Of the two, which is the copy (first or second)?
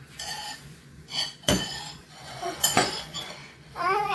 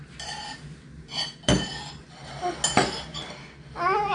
first